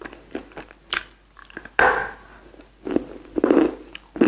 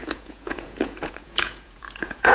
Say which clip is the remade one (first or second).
second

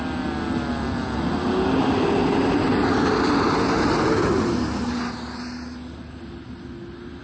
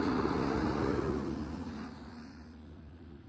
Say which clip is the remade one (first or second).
second